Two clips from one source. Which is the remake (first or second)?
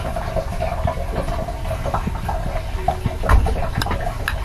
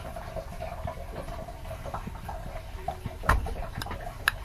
second